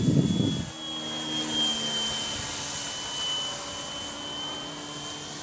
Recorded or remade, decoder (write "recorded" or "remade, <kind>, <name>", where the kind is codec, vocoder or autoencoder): recorded